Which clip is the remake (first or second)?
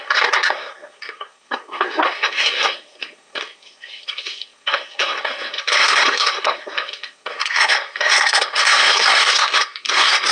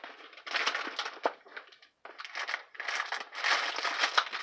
first